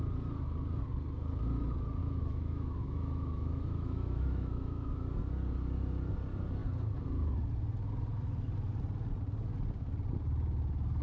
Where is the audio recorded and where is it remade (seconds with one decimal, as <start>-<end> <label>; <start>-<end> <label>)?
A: 0.0-2.0 recorded; 2.0-4.9 remade; 4.9-11.0 recorded